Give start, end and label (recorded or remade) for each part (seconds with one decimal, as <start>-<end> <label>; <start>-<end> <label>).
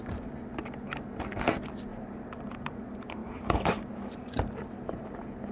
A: 0.0-1.9 recorded; 1.9-2.8 remade; 2.8-3.2 recorded; 3.2-4.3 remade; 4.3-5.5 recorded